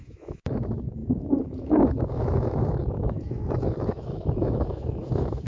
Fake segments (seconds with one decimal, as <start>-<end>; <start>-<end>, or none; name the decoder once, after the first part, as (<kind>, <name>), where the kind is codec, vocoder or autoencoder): 0.0-5.5 (autoencoder, DAC-VAE)

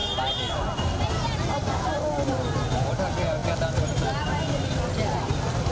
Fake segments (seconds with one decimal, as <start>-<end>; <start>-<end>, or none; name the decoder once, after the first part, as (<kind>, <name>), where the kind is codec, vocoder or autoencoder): none

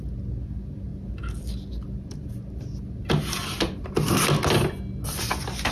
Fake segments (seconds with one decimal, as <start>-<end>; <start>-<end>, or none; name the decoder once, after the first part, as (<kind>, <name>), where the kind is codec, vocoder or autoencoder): none

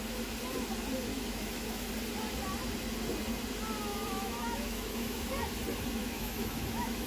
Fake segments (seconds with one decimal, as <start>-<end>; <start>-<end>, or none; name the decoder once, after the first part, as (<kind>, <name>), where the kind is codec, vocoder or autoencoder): 1.1-1.9 (autoencoder, DAC-VAE); 3.9-5.3; 6.0-7.1

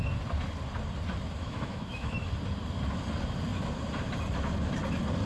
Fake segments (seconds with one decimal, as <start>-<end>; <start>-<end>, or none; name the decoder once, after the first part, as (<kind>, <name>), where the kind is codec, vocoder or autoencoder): 1.4-2.3 (autoencoder, DAC-VAE)

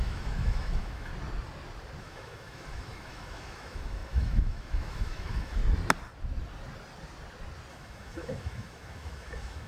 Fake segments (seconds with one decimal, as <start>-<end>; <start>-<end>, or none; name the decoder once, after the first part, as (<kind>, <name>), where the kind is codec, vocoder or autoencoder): 0.0-1.1 (autoencoder, DAC-VAE); 2.0-5.6; 7.7-9.7

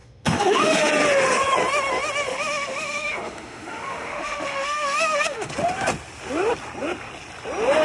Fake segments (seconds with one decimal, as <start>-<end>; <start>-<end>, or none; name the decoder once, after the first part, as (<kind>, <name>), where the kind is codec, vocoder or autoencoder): 0.0-0.9 (autoencoder, DAC-VAE); 2.3-5.5

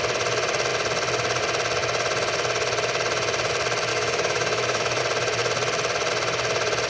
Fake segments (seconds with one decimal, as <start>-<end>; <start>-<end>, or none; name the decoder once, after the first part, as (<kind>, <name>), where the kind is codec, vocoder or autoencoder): 3.9-5.0 (autoencoder, DAC-VAE)